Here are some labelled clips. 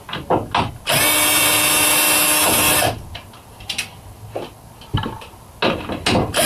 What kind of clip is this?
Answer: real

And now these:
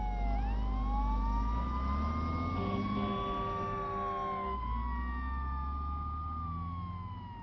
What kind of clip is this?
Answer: real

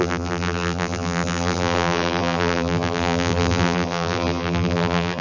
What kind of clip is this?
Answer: fake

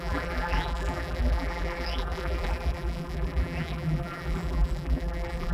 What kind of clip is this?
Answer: fake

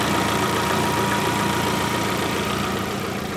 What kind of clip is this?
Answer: fake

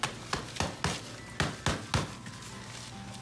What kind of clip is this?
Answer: real